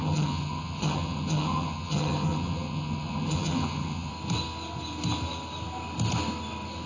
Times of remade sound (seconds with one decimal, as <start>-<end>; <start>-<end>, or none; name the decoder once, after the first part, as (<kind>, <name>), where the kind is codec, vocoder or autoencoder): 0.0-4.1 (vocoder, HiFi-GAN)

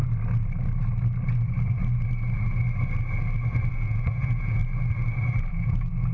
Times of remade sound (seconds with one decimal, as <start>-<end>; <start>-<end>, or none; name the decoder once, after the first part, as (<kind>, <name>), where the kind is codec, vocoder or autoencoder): 3.7-4.6 (vocoder, Vocos); 5.5-6.1

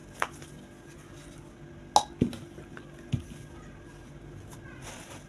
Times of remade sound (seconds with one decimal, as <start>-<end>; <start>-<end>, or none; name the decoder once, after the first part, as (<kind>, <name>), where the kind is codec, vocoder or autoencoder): none

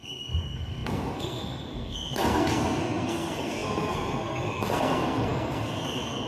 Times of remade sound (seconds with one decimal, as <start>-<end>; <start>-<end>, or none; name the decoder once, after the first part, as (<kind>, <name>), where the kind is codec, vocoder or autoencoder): 0.0-6.3 (codec, SNAC)

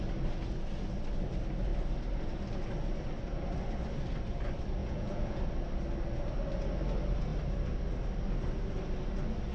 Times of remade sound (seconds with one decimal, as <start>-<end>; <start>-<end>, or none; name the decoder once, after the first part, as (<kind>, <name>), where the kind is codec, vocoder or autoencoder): 4.8-5.4 (vocoder, Vocos)